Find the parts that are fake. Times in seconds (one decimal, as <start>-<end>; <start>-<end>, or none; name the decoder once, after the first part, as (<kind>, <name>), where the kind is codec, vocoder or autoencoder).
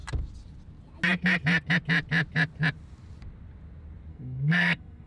4.1-5.1 (codec, SNAC)